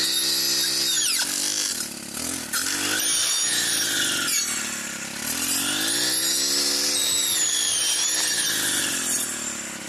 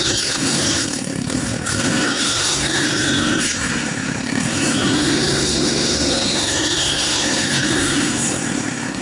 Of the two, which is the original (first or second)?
first